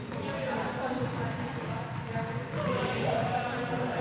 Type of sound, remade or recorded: recorded